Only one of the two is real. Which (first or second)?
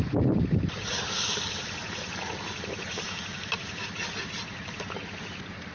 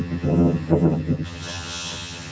first